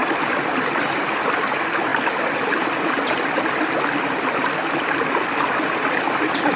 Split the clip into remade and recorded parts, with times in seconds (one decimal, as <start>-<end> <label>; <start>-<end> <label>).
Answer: 0.0-0.8 remade; 0.8-1.9 recorded; 1.9-5.9 remade; 5.9-6.6 recorded